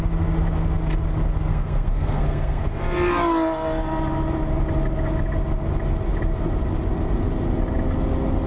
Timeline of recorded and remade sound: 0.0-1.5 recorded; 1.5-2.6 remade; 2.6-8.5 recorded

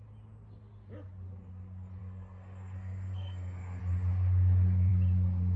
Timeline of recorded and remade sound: 0.0-2.0 recorded; 2.0-3.8 remade; 3.8-5.6 recorded

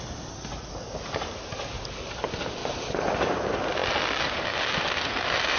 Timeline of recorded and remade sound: 0.0-5.6 recorded

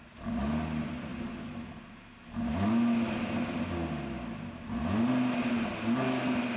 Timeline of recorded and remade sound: 0.0-6.6 recorded